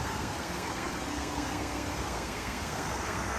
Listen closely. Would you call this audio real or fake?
fake